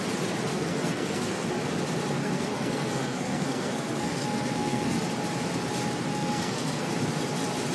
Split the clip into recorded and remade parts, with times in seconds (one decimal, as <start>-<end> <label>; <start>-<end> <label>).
0.0-0.5 recorded; 0.5-1.5 remade; 1.5-2.2 recorded; 2.2-5.0 remade; 5.0-6.1 recorded; 6.1-6.9 remade; 6.9-7.7 recorded